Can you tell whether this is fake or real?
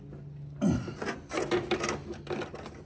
real